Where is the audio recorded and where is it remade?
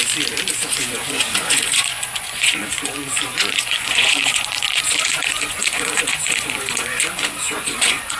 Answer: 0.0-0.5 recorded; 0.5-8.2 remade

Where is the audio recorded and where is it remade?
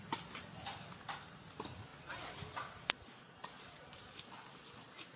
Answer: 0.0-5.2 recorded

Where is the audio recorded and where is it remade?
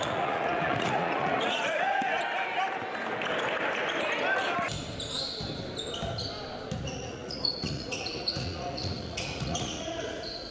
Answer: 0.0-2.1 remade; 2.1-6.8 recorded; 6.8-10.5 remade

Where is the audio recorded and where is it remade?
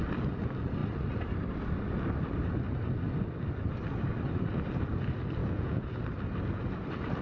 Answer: 0.0-5.4 recorded; 5.4-6.0 remade; 6.0-7.2 recorded